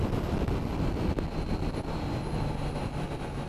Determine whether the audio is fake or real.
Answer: real